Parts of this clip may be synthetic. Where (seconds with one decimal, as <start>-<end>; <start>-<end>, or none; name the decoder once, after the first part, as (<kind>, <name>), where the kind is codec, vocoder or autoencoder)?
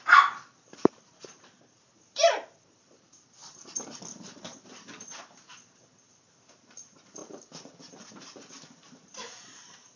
0.0-10.0 (vocoder, BigVGAN v2)